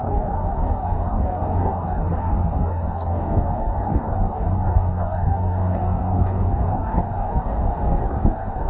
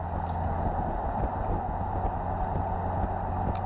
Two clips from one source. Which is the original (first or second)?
second